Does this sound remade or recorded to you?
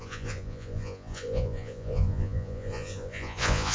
remade